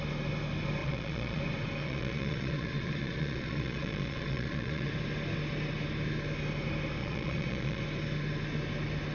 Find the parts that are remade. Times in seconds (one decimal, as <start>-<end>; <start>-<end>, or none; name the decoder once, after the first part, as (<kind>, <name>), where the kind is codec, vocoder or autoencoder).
0.8-1.4 (vocoder, Vocos); 1.8-4.9; 7.0-7.8